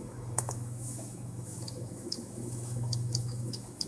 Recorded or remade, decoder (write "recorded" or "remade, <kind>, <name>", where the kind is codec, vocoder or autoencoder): remade, autoencoder, DAC-VAE